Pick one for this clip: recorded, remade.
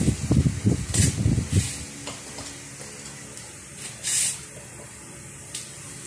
recorded